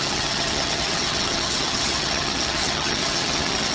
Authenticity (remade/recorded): remade